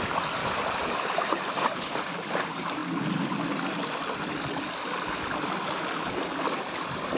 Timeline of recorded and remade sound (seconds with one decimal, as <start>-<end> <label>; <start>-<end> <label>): 0.0-0.4 recorded; 0.4-2.1 remade; 2.1-7.2 recorded